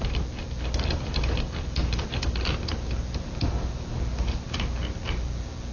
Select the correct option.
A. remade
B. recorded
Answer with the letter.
B